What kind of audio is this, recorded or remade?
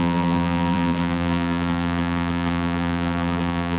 remade